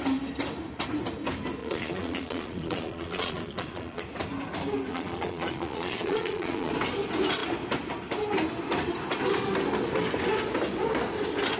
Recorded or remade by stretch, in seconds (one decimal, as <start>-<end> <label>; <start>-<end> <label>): 0.0-1.6 recorded; 1.6-4.0 remade; 4.0-4.9 recorded; 4.9-6.7 remade; 6.7-11.6 recorded